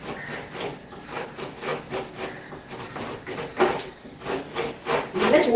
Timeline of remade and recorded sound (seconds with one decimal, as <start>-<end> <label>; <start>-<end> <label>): 0.0-5.6 recorded